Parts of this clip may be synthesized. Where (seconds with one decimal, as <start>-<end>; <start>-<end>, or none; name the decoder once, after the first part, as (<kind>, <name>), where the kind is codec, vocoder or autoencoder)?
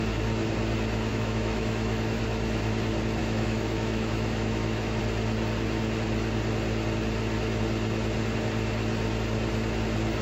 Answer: 1.1-2.2 (autoencoder, DAC-VAE); 3.2-5.0